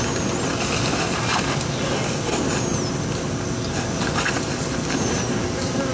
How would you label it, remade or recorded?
recorded